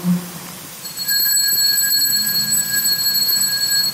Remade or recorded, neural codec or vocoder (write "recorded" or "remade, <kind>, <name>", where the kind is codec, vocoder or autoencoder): remade, vocoder, BigVGAN v2